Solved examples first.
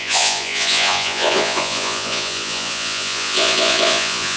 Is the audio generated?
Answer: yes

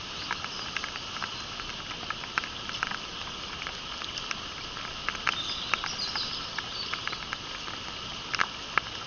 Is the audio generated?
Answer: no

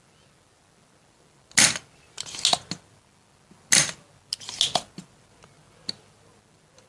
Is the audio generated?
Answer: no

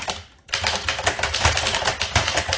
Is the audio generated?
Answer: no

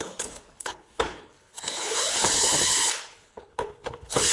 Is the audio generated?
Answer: yes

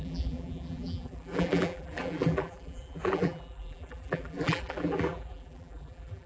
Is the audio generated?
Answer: yes